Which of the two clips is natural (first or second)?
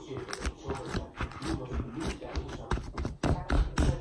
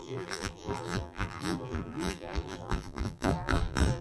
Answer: first